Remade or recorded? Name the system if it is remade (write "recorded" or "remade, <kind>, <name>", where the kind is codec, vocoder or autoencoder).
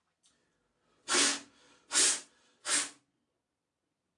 recorded